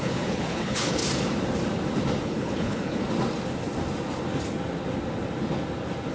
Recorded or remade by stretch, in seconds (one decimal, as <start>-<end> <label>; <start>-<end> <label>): 0.0-1.0 remade; 1.0-2.2 recorded; 2.2-3.0 remade; 3.0-6.1 recorded

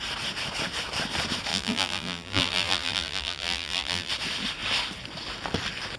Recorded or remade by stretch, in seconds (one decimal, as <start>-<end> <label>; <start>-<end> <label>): 0.0-1.5 recorded; 1.5-4.1 remade; 4.1-6.0 recorded

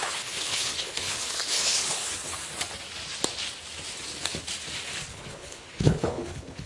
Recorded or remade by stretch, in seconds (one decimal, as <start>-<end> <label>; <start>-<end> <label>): 0.0-2.1 remade; 2.1-5.1 recorded; 5.1-6.7 remade

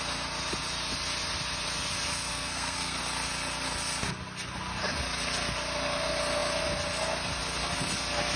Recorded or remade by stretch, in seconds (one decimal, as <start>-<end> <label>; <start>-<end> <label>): 0.0-2.3 recorded; 2.3-3.0 remade; 3.0-8.4 recorded

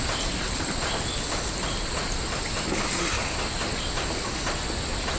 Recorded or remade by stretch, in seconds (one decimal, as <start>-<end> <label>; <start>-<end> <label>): 0.0-5.2 recorded

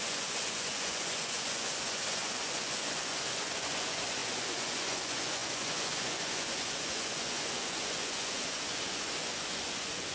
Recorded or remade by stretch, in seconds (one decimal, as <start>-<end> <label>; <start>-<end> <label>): 0.0-10.1 remade